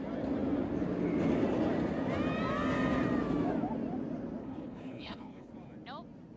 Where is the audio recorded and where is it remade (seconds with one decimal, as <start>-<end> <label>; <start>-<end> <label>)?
0.0-4.4 recorded; 4.4-5.5 remade; 5.5-6.4 recorded